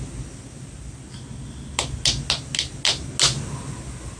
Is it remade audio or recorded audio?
recorded